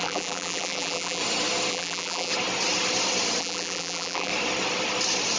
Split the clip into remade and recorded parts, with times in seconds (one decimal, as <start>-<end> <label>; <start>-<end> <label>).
0.0-1.2 remade; 1.2-1.7 recorded; 1.7-2.3 remade; 2.3-3.4 recorded; 3.4-4.3 remade; 4.3-5.4 recorded